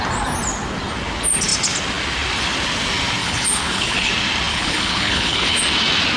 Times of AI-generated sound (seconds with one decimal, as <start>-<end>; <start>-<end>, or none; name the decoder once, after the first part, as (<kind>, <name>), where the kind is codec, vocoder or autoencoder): 3.2-4.1 (codec, HILCodec); 4.5-5.6